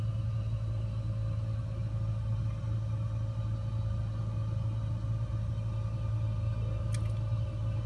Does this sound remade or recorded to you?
recorded